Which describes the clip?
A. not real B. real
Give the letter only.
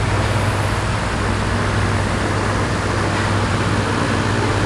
B